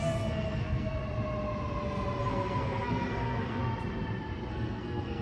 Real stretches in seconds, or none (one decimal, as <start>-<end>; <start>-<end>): 1.0-2.2; 3.6-4.5